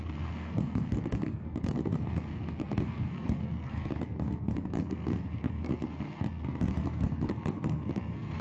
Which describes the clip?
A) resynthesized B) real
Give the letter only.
A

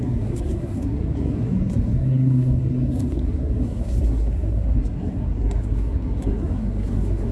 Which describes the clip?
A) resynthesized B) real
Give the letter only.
A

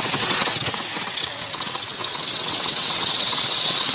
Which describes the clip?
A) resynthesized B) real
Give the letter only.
A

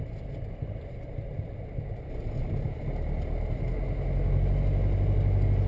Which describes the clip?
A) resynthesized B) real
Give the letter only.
B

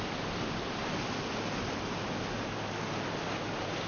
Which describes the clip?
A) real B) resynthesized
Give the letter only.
A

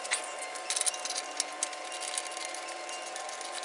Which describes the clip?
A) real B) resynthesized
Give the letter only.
A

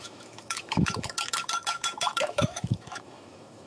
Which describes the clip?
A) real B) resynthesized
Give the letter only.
B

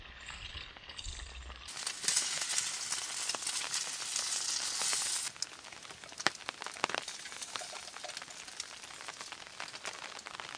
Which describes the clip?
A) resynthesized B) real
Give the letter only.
B